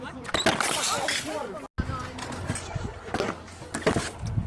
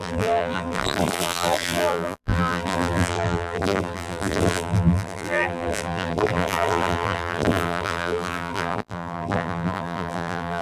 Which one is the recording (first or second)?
first